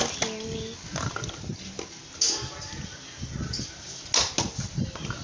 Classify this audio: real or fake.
real